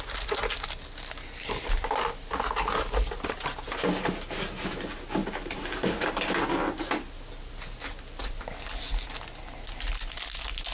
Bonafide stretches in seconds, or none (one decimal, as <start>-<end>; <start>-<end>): 0.0-5.2; 6.3-10.7